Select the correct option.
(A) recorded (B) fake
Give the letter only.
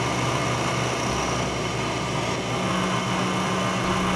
A